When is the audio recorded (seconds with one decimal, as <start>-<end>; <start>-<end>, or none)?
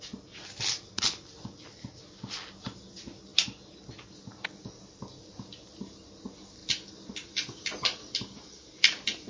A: 0.0-9.3